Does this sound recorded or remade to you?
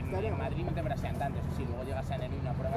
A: recorded